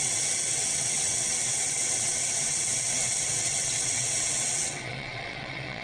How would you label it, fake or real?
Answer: fake